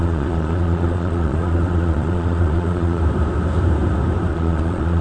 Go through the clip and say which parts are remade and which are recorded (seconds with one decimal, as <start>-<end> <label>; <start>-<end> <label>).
0.0-3.0 remade; 3.0-4.3 recorded; 4.3-5.0 remade